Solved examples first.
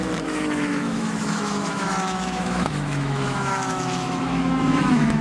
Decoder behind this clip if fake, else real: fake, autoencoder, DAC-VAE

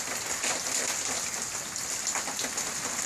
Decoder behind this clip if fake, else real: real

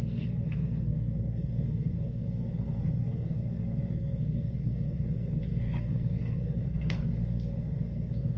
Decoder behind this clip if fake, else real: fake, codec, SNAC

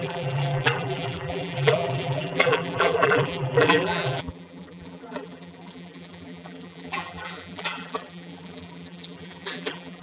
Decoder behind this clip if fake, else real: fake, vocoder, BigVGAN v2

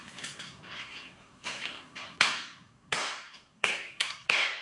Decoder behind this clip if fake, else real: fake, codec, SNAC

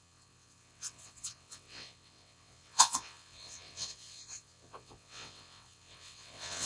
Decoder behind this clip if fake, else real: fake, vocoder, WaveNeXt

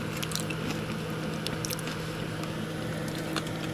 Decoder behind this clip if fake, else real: real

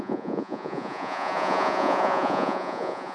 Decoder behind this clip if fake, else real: fake, vocoder, Vocos